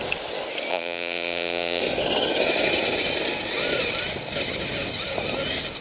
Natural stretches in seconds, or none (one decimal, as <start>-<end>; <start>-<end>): 0.0-0.7; 1.8-5.8